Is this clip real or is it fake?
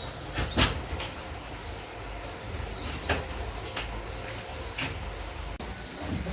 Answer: real